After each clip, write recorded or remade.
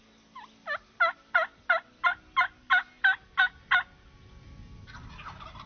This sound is recorded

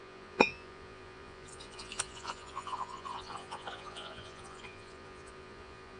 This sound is remade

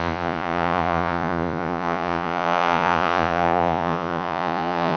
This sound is remade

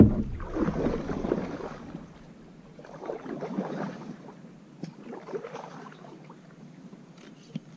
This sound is recorded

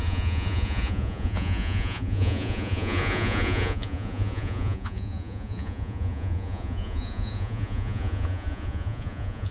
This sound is remade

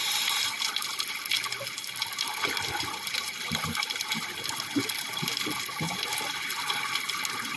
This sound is recorded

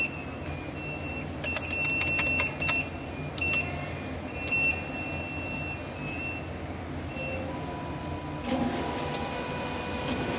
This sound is recorded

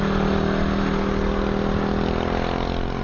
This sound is recorded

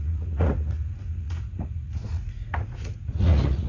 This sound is remade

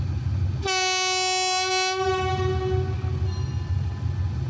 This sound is recorded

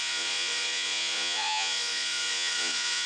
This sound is remade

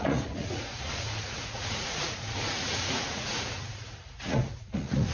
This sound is remade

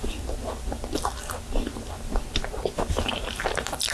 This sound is recorded